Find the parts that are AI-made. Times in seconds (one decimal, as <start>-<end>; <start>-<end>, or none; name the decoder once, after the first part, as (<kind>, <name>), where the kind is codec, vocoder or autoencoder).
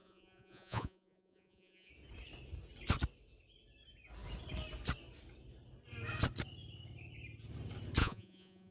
0.0-1.9 (vocoder, Vocos); 8.0-8.7